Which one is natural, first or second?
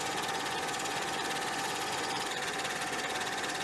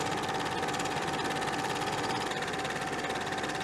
second